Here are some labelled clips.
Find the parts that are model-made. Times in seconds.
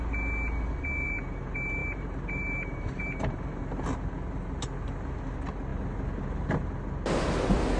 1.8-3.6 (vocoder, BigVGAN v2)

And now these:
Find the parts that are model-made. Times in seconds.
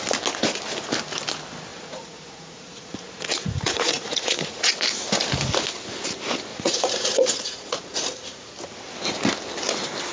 1.7-4.7 (vocoder, Vocos); 6.5-8.5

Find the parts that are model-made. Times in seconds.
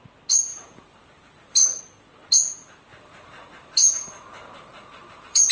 0.5-1.8 (vocoder, BigVGAN v2); 2.9-5.5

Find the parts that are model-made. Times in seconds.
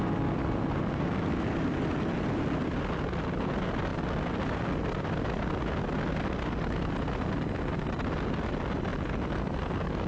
none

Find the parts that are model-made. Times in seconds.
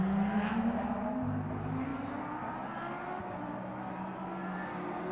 none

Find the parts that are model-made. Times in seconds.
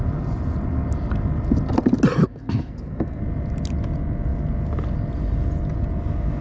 2.2-3.2 (codec, SNAC)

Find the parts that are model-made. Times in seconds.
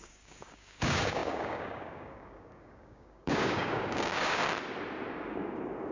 0.0-4.4 (codec, DAC); 5.1-5.9